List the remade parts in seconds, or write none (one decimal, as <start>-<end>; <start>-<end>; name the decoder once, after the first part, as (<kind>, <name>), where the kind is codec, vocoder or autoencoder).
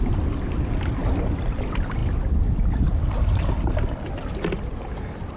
0.0-1.0 (vocoder, BigVGAN v2); 1.6-2.0